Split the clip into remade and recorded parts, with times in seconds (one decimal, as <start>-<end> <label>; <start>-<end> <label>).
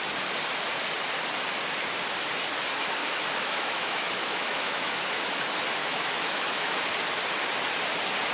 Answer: 0.0-3.0 recorded; 3.0-5.3 remade; 5.3-5.8 recorded; 5.8-6.8 remade; 6.8-8.3 recorded